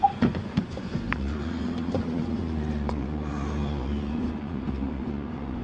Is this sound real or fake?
fake